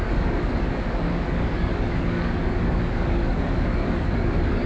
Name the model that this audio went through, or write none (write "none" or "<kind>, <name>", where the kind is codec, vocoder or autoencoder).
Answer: codec, DAC